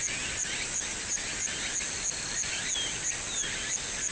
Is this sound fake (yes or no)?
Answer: no